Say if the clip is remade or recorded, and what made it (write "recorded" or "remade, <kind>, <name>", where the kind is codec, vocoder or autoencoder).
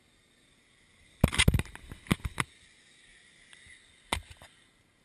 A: recorded